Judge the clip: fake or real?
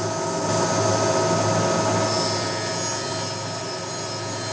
real